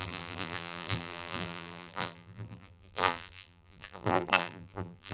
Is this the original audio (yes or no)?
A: no